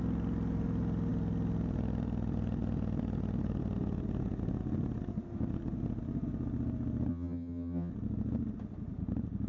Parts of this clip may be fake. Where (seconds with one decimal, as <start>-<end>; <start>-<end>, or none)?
7.1-7.9